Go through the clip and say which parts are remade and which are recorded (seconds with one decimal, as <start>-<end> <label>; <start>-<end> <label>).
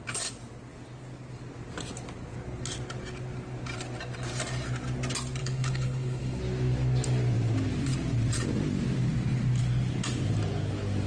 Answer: 0.0-5.4 recorded; 5.4-6.4 remade; 6.4-11.1 recorded